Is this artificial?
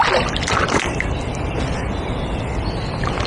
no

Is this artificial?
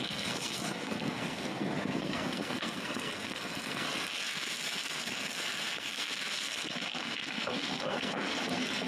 yes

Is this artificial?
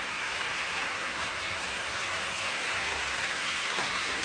yes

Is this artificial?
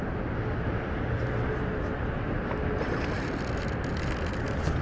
no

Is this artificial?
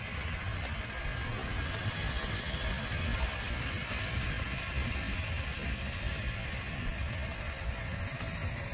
no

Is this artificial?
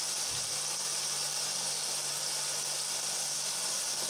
no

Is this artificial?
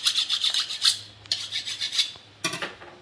no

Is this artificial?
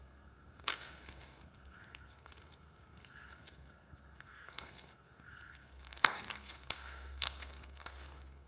yes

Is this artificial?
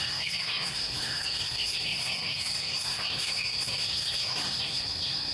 yes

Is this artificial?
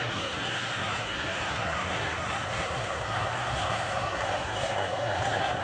yes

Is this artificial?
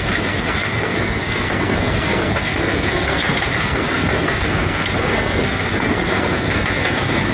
yes